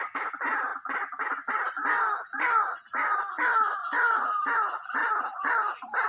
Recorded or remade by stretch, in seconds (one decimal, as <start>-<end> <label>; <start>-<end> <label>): 0.0-5.0 recorded; 5.0-6.1 remade